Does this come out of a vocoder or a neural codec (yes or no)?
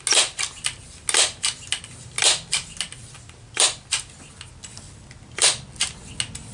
no